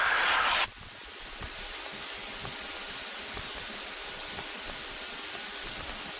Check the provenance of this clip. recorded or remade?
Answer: recorded